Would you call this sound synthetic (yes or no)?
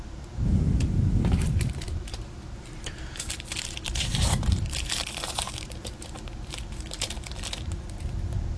yes